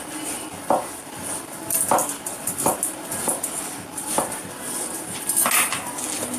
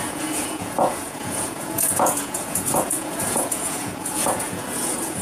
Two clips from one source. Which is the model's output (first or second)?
second